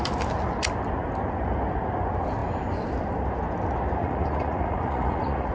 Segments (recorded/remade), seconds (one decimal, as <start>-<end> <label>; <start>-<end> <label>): 0.0-4.0 recorded; 4.0-5.5 remade

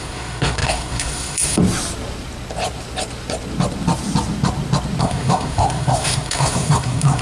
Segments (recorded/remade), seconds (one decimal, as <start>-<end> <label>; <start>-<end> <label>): 0.0-1.6 remade; 1.6-5.0 recorded; 5.0-7.2 remade